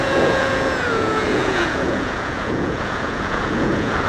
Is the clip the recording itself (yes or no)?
no